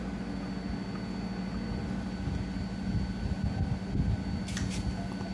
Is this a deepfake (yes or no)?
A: no